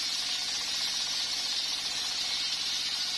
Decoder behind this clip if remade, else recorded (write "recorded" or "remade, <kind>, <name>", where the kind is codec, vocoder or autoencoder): recorded